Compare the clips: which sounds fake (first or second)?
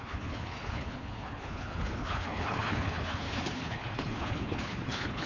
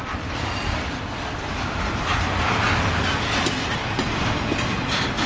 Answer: first